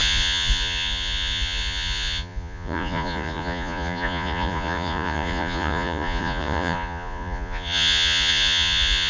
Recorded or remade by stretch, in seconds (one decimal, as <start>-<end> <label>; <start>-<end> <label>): 0.0-9.1 remade